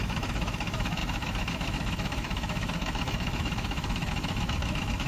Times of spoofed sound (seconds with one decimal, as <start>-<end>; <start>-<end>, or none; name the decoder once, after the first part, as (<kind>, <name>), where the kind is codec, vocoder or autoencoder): 0.0-5.1 (autoencoder, DAC-VAE)